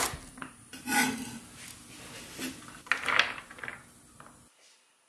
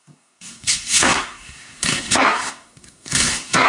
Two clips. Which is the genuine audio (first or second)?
first